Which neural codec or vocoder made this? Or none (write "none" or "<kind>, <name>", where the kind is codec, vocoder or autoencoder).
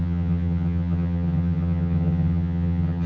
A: vocoder, HiFi-GAN